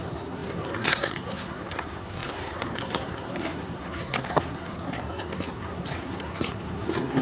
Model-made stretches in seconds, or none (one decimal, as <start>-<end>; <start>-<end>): 0.0-7.2